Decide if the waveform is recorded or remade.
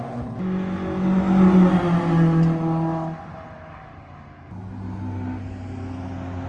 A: recorded